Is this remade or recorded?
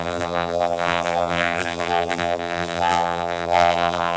remade